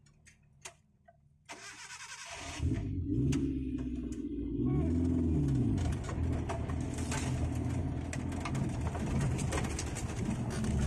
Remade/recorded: recorded